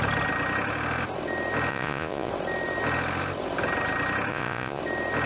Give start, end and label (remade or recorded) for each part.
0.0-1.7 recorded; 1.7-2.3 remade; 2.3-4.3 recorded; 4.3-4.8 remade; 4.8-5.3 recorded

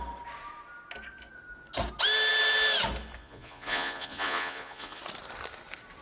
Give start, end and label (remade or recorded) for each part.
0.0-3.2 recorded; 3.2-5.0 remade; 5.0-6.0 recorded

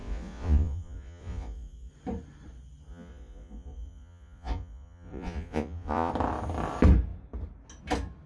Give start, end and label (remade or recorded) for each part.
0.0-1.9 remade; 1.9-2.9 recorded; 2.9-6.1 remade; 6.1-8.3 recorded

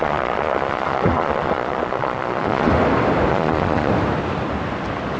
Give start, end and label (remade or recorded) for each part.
0.0-2.7 remade; 2.7-3.3 recorded; 3.3-3.9 remade; 3.9-5.2 recorded

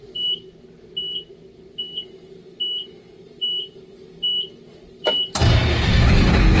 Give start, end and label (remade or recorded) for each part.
0.0-6.6 recorded

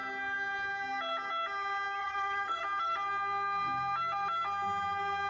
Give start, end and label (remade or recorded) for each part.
0.0-2.0 recorded; 2.0-2.6 remade; 2.6-5.3 recorded

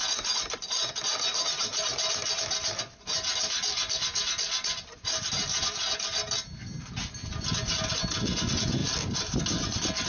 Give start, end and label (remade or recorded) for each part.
0.0-10.1 recorded